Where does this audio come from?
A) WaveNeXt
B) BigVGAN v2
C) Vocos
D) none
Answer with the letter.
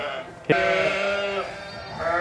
D